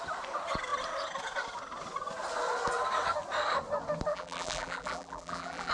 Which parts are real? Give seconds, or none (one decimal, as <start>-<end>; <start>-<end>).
0.0-4.1